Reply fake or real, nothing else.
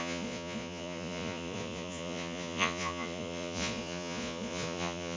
fake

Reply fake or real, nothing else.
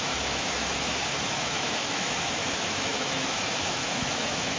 fake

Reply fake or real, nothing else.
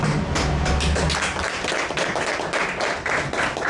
real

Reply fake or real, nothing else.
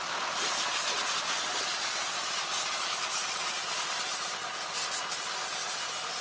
real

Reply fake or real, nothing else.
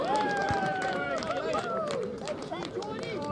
fake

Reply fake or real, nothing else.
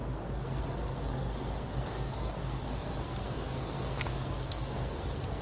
fake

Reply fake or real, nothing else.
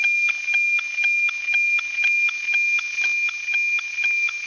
real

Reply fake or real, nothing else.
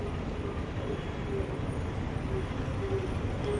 real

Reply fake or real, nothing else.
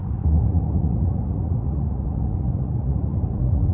fake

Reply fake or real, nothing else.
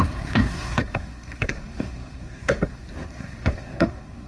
fake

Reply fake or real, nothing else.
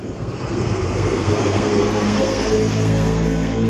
fake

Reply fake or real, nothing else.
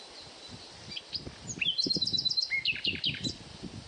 real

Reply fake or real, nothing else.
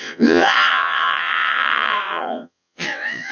fake